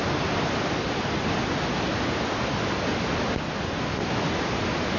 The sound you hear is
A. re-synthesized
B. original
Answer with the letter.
B